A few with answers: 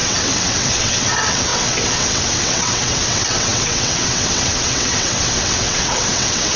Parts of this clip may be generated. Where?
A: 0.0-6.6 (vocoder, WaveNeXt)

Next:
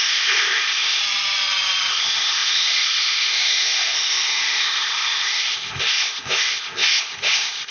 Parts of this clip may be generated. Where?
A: 0.0-1.0 (codec, ZipCodec); 1.9-7.7

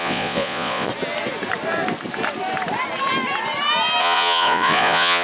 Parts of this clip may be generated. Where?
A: 0.0-0.9 (vocoder, Vocos); 4.0-5.2

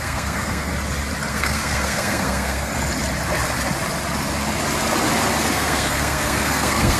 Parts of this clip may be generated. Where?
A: 0.0-0.7 (codec, SNAC); 1.3-2.7; 5.5-7.0

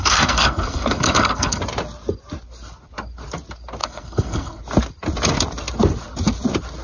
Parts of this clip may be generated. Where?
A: 0.0-1.6 (codec, SNAC); 3.8-4.6

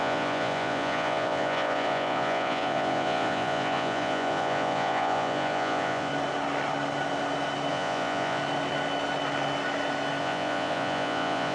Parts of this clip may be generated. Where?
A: 0.0-6.1 (vocoder, Vocos); 7.7-8.4; 10.2-11.5

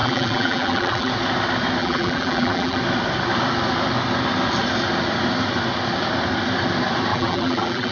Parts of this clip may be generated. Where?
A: 0.0-1.1 (vocoder, BigVGAN v2); 1.8-2.8; 7.1-7.9